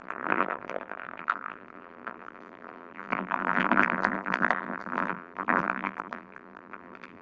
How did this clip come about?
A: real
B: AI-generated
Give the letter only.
B